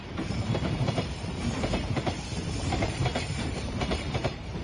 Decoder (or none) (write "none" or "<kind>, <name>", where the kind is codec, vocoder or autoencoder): vocoder, BigVGAN v2